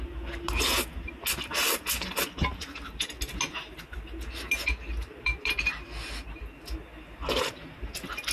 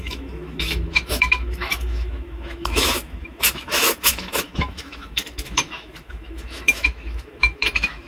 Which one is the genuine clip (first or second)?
first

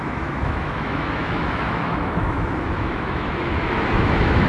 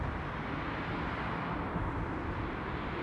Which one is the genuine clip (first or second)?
second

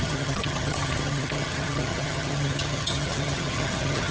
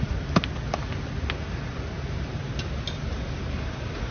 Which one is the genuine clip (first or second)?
second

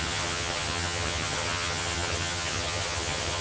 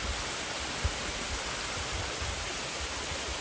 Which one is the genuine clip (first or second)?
second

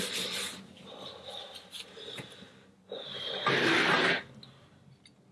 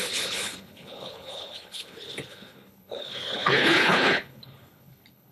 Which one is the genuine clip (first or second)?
first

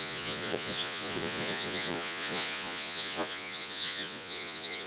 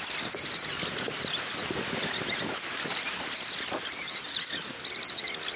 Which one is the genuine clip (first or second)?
second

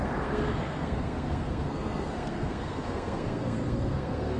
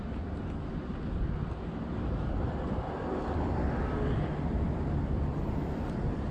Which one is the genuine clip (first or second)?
second